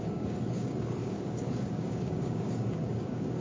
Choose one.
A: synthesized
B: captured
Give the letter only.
A